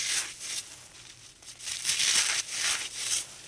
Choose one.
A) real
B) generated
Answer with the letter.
A